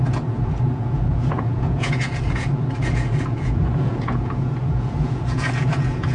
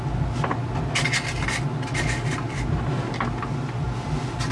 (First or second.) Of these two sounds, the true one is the second